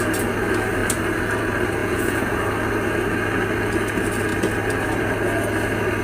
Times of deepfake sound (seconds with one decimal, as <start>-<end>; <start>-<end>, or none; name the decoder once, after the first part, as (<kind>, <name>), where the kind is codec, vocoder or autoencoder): 1.8-2.4 (vocoder, Vocos)